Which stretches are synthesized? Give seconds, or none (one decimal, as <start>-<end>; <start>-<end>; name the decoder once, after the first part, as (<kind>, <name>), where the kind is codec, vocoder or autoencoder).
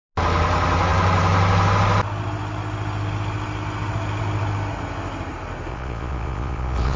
5.7-7.0 (vocoder, Vocos)